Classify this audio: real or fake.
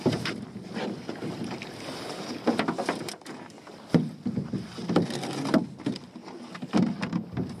real